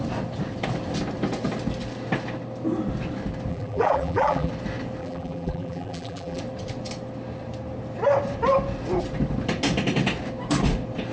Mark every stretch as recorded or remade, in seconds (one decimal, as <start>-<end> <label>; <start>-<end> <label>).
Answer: 0.0-3.5 recorded; 3.5-4.5 remade; 4.5-5.0 recorded; 5.0-6.4 remade; 6.4-11.1 recorded